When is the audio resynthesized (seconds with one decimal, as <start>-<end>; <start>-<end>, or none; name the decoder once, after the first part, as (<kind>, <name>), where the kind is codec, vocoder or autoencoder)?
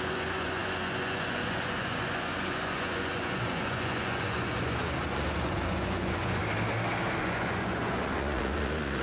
0.0-6.4 (vocoder, Vocos); 7.2-9.0